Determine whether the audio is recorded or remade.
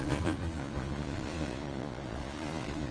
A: remade